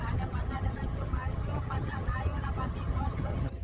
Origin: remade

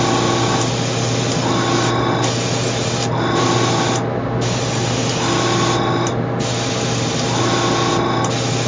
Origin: recorded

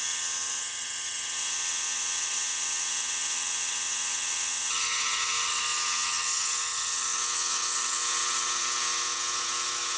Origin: remade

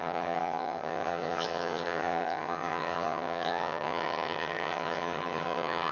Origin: remade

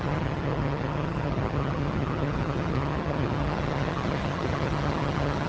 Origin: remade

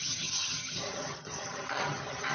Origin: remade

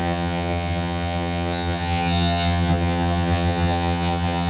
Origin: remade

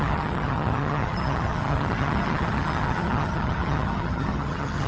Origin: remade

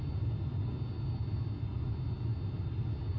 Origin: recorded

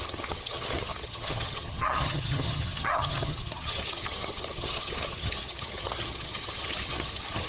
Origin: remade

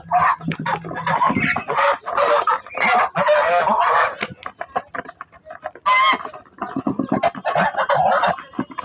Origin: recorded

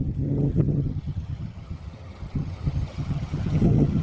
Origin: remade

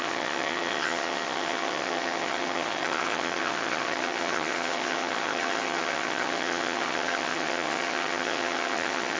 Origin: remade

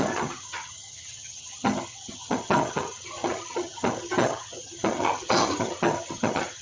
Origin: remade